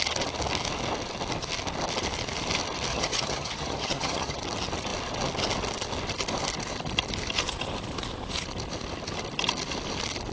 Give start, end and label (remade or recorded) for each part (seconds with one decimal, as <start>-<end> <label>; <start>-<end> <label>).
0.0-2.9 recorded; 2.9-4.4 remade; 4.4-10.3 recorded